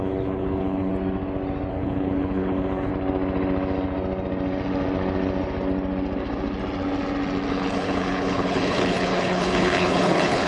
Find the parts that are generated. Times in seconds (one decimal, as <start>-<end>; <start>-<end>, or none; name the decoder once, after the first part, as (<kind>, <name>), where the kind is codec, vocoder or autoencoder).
0.0-0.9 (codec, HILCodec); 1.7-2.9; 7.5-10.5